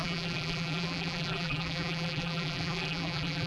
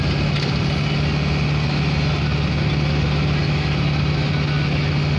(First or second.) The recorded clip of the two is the second